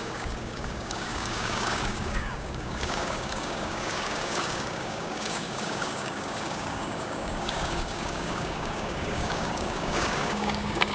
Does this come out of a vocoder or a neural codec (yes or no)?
yes